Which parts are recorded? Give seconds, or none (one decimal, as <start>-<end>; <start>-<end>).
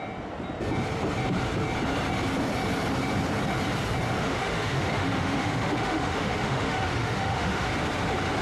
0.0-4.2; 7.7-8.4